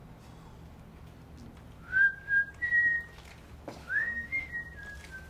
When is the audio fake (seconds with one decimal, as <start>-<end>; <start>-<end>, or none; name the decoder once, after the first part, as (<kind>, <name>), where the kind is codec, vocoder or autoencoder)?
3.8-4.5 (autoencoder, DAC-VAE)